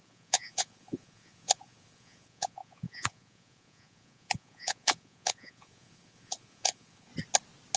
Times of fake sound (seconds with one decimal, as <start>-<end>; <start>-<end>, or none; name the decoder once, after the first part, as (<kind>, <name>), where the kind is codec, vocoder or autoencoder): 0.0-7.1 (vocoder, Vocos)